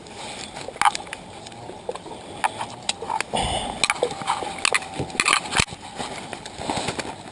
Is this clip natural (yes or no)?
yes